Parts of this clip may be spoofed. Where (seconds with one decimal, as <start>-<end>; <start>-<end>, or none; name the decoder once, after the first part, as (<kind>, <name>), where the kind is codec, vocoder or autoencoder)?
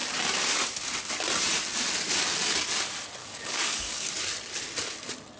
3.2-4.1 (codec, DAC)